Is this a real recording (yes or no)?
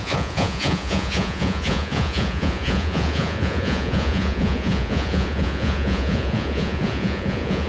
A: no